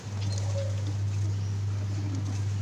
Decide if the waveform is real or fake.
real